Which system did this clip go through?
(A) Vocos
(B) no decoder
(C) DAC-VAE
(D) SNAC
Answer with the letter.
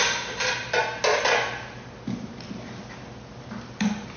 B